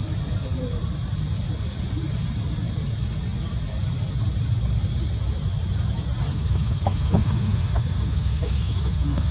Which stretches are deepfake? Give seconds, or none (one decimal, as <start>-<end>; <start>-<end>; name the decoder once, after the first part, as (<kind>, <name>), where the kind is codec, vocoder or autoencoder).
6.3-9.3 (autoencoder, DAC-VAE)